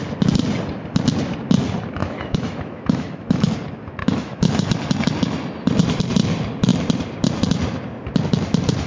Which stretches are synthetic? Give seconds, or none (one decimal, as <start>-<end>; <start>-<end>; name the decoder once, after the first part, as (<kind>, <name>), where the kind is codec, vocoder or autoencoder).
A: 2.0-3.5 (autoencoder, DAC-VAE); 4.0-4.7